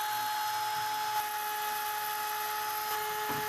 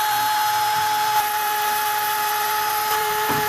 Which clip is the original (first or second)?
first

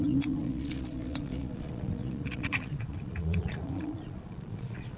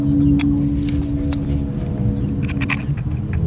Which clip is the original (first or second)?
second